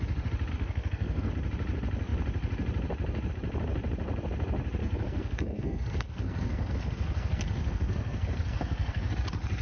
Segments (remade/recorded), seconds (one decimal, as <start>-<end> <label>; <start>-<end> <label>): 0.0-0.5 recorded; 0.5-1.3 remade; 1.3-4.8 recorded; 4.8-9.1 remade; 9.1-9.6 recorded